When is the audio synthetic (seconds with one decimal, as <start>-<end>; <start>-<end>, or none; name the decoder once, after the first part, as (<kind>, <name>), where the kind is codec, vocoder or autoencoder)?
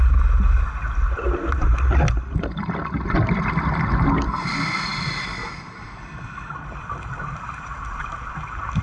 none